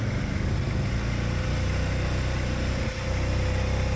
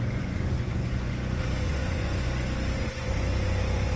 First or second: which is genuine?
first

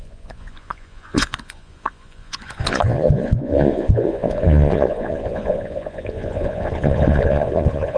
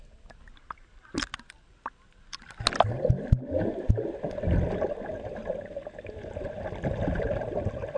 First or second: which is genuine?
second